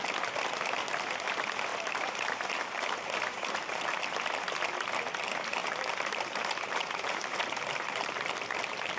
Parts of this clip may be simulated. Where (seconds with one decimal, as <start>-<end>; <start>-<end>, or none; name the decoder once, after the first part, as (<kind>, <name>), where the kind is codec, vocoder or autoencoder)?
1.7-4.0 (vocoder, BigVGAN v2); 5.6-8.6